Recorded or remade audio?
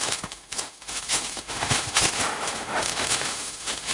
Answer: remade